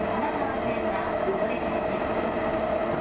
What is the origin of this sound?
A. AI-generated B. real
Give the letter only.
B